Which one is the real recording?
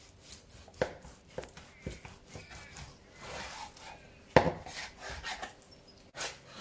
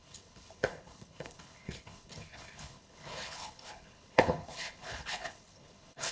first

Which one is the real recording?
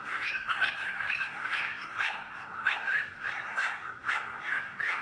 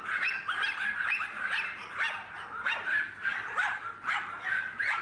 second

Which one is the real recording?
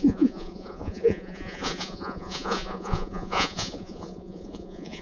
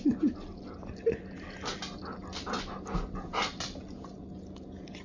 second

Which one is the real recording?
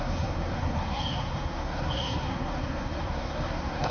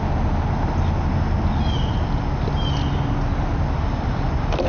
second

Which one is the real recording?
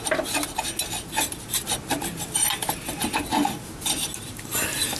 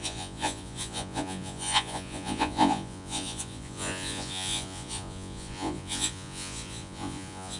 first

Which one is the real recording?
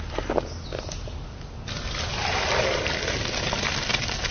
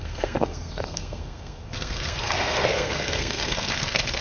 first